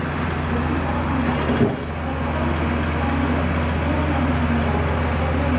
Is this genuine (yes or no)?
yes